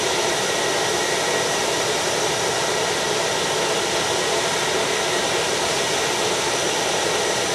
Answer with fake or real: real